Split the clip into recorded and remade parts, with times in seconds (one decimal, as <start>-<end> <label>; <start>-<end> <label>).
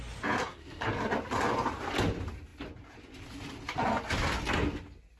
0.0-0.4 recorded; 0.4-0.9 remade; 0.9-5.2 recorded